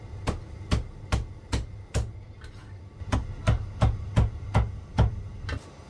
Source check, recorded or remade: recorded